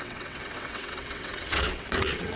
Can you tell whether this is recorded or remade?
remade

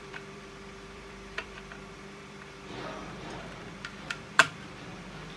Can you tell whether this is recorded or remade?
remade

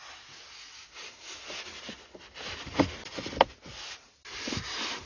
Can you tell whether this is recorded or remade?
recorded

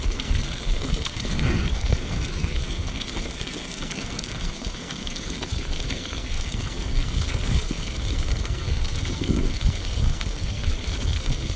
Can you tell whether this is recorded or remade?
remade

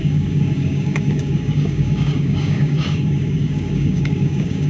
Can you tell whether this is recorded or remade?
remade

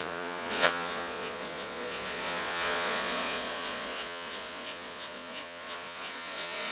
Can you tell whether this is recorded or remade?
remade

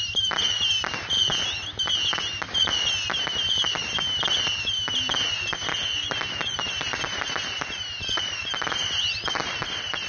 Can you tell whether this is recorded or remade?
recorded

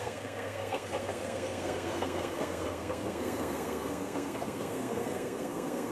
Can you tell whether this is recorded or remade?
remade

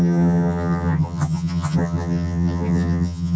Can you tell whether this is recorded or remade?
remade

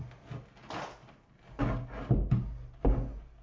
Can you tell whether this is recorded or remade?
recorded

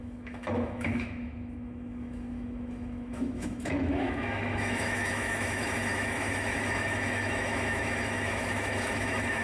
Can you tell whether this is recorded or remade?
remade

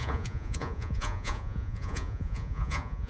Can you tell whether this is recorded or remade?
remade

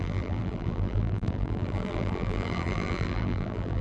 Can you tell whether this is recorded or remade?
remade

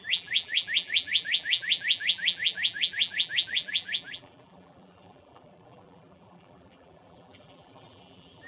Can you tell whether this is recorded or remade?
remade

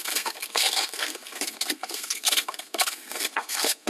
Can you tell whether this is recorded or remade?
remade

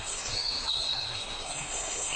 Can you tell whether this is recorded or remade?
remade